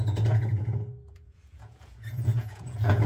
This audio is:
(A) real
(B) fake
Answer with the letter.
B